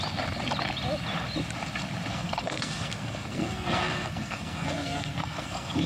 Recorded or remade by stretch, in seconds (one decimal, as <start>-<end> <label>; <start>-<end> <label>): 0.0-2.1 recorded; 2.1-5.9 remade